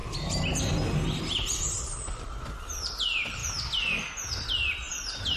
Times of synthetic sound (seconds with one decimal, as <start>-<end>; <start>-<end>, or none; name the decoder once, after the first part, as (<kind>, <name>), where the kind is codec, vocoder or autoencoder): 0.6-3.4 (vocoder, BigVGAN v2); 4.9-5.4